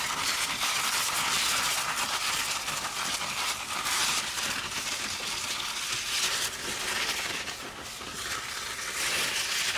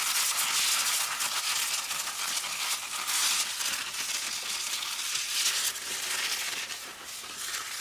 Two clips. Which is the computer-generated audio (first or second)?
first